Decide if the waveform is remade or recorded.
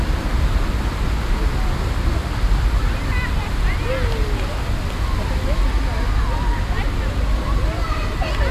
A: recorded